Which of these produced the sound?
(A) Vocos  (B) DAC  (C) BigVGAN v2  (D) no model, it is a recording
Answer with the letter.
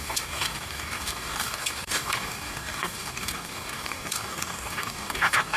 B